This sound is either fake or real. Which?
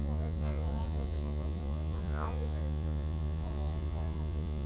fake